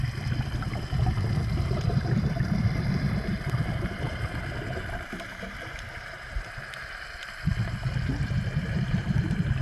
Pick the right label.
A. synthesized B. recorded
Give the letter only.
A